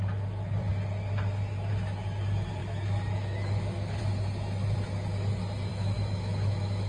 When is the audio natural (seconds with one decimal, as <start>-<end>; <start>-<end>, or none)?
0.0-2.6; 4.0-5.7